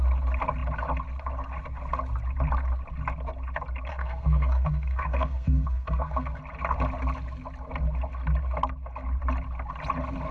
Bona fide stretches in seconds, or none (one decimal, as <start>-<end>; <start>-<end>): 0.0-3.9; 6.4-10.3